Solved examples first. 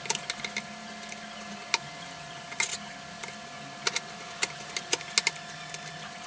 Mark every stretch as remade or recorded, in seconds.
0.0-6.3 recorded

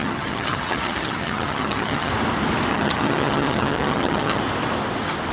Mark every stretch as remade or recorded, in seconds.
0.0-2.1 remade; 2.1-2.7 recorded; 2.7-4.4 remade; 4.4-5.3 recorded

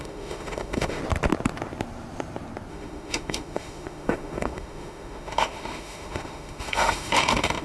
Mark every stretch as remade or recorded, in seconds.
0.0-1.0 remade; 1.0-2.7 recorded; 2.7-7.6 remade